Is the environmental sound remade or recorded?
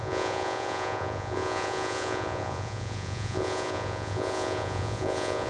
remade